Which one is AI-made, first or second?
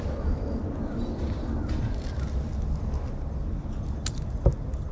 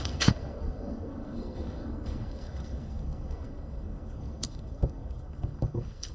second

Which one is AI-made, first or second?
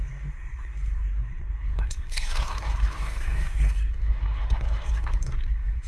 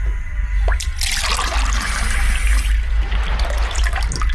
first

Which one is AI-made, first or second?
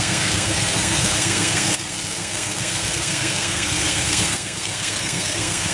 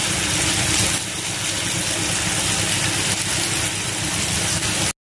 first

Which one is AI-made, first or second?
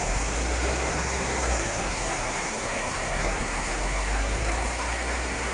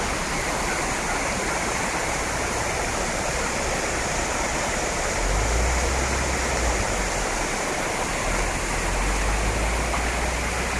first